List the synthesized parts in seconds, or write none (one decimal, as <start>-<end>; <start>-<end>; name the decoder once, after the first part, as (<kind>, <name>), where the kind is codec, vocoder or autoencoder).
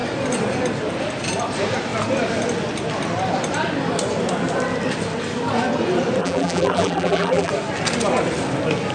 6.2-7.5 (vocoder, BigVGAN v2)